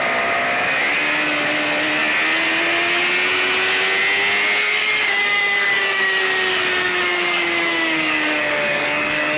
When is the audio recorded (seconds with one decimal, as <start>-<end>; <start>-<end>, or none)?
0.0-4.6